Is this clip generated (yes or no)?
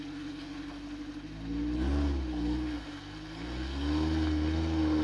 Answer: no